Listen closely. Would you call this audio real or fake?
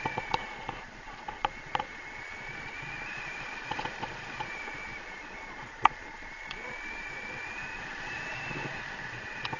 fake